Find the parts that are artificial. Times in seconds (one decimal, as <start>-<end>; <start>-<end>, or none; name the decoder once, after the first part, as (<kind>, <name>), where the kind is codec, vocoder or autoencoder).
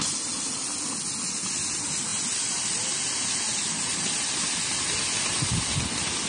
none